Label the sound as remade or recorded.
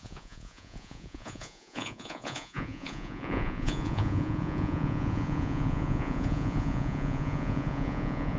remade